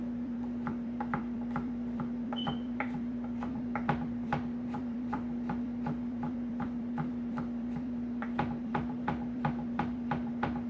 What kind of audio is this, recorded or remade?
remade